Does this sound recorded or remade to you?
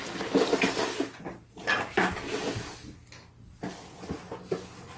recorded